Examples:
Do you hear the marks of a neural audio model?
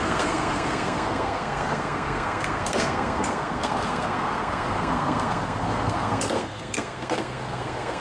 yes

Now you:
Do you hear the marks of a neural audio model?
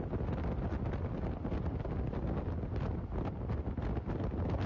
no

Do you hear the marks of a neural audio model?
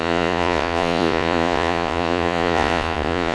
yes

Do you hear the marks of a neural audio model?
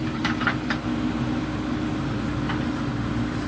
no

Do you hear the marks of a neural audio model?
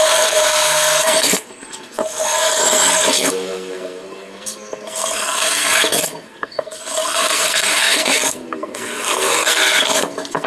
yes